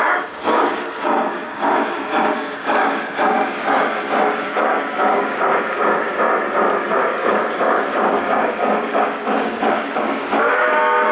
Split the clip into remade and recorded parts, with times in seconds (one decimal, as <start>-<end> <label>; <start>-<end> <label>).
0.0-6.1 remade; 6.1-6.9 recorded; 6.9-11.1 remade